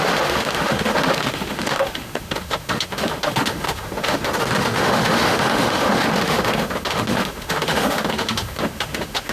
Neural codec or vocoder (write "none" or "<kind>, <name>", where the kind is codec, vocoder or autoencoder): autoencoder, DAC-VAE